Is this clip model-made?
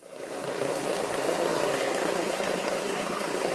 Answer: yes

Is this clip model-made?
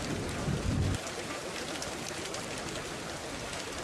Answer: no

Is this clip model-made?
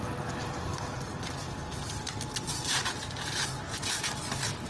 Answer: no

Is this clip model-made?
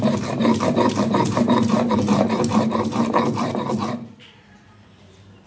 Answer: yes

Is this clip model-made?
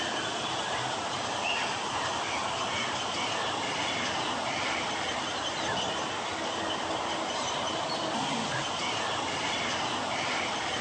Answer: yes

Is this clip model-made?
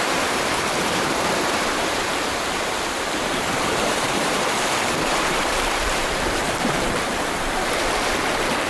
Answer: yes